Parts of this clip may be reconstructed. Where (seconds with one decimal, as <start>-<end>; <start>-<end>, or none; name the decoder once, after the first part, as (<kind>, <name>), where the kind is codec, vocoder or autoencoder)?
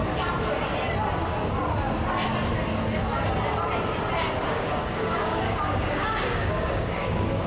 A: 4.5-7.5 (codec, DAC)